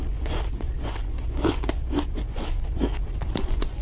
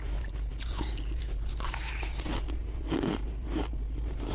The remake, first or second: first